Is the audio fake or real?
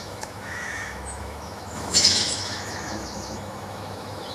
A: fake